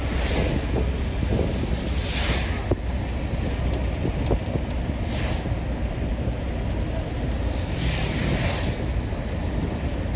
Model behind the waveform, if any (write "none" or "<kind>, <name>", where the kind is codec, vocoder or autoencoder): none